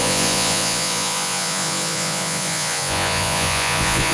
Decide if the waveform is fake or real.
fake